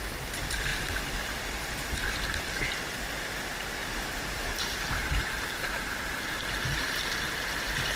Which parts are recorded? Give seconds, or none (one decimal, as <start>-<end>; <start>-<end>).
0.0-3.8; 7.2-8.0